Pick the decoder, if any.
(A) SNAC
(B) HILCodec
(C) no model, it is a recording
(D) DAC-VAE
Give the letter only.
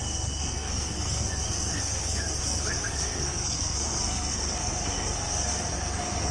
A